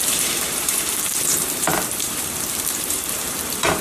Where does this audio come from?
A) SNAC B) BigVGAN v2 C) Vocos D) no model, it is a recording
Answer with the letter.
B